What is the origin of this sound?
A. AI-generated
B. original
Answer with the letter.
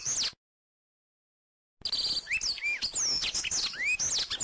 B